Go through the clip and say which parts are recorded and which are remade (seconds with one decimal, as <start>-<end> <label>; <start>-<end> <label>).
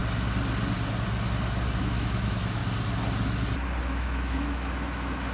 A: 0.0-1.8 recorded; 1.8-2.6 remade; 2.6-3.8 recorded; 3.8-5.3 remade